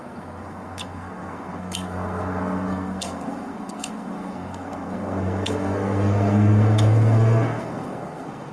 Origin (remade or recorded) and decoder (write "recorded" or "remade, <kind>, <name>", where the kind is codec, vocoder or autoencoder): remade, codec, SNAC